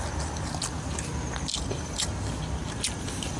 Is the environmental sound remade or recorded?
recorded